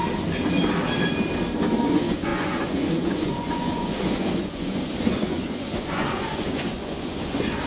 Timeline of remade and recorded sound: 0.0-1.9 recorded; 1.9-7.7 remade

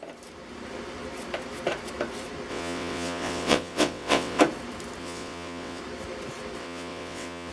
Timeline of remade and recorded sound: 0.0-2.5 recorded; 2.5-4.4 remade; 4.4-5.0 recorded; 5.0-5.8 remade; 5.8-6.6 recorded; 6.6-7.5 remade

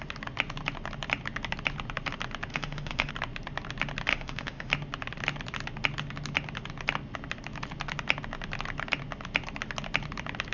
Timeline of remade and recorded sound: 0.0-2.5 recorded; 2.5-3.1 remade; 3.1-4.1 recorded; 4.1-4.7 remade; 4.7-10.5 recorded

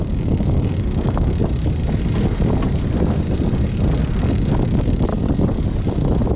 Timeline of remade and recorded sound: 0.0-1.4 remade; 1.4-4.0 recorded; 4.0-5.1 remade; 5.1-6.4 recorded

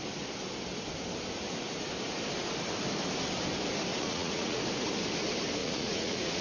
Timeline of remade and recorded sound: 0.0-3.9 recorded; 3.9-4.6 remade; 4.6-5.6 recorded; 5.6-6.4 remade

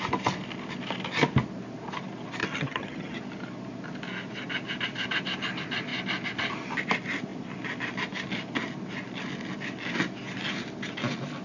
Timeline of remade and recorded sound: 0.0-2.4 recorded; 2.4-3.2 remade; 3.2-11.4 recorded

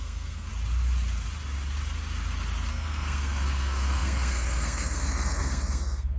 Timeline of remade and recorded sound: 0.0-0.5 remade; 0.5-2.7 recorded; 2.7-6.2 remade